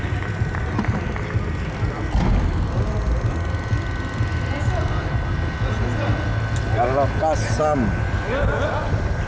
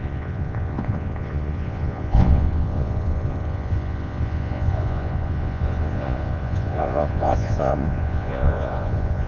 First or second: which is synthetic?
second